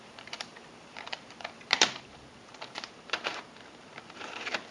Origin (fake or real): fake